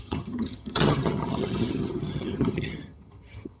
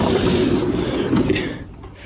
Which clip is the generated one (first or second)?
first